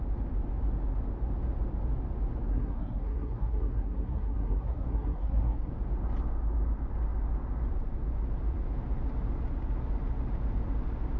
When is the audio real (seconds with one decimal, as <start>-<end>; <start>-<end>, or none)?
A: 0.0-2.5; 5.7-11.2